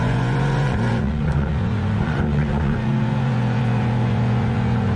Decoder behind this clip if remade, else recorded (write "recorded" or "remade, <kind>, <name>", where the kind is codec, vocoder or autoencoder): remade, vocoder, Vocos